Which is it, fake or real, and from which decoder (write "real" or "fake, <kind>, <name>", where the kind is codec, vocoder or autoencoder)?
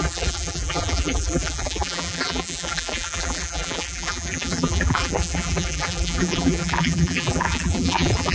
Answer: fake, vocoder, BigVGAN v2